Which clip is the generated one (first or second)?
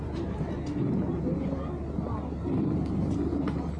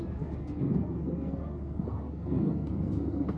second